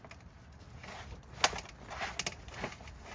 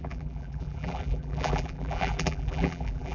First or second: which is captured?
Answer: first